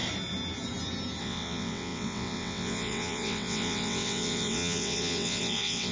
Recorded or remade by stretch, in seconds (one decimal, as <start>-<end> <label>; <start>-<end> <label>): 0.0-1.2 recorded; 1.2-5.9 remade